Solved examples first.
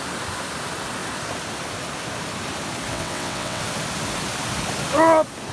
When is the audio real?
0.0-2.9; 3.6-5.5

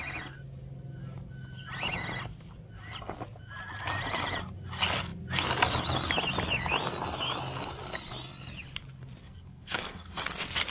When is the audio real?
0.0-9.2; 10.2-10.7

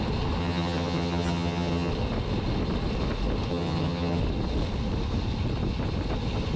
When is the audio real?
0.0-0.4; 1.9-3.5; 4.2-6.6

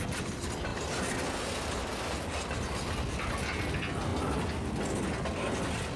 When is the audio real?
0.0-6.0

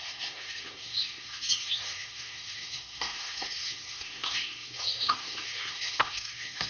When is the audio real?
none